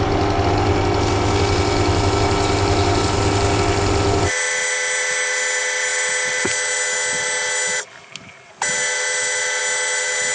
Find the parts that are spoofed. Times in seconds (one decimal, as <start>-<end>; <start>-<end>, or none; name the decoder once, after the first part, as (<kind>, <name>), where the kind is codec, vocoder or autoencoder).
none